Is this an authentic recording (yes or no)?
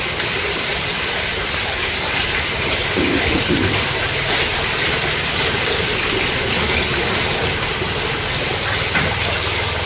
yes